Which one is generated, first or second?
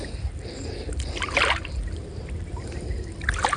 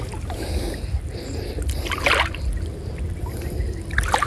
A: first